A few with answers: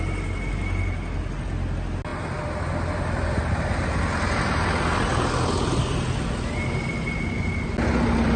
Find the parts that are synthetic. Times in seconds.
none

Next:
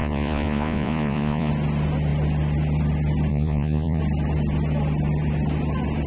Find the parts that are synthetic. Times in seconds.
0.0-1.5; 3.3-4.0

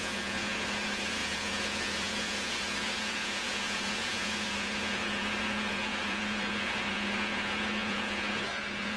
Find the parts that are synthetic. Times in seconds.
0.0-9.0

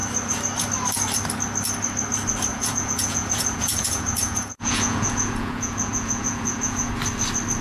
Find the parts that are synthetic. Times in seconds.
2.5-6.9